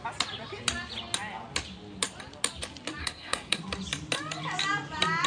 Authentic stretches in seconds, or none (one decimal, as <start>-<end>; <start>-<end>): 0.0-3.0; 3.6-5.3